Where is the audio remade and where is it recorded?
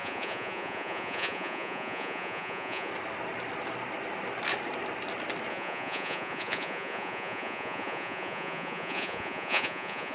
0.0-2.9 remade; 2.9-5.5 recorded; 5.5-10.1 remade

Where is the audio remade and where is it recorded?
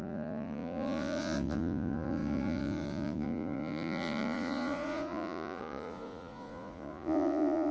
0.0-7.7 remade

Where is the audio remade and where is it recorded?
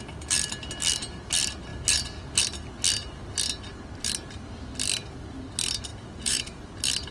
0.0-5.9 recorded; 5.9-6.6 remade; 6.6-7.1 recorded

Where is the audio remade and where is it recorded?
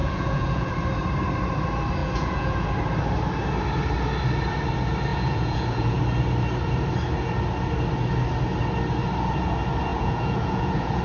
0.0-0.7 remade; 0.7-2.0 recorded; 2.0-2.7 remade; 2.7-5.1 recorded; 5.1-6.0 remade; 6.0-9.9 recorded; 9.9-11.0 remade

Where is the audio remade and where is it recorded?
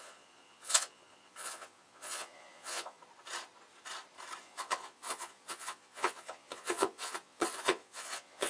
0.0-3.0 remade; 3.0-4.4 recorded; 4.4-8.5 remade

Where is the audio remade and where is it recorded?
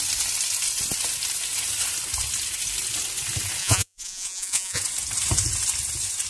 0.0-3.6 recorded; 3.6-4.8 remade; 4.8-6.3 recorded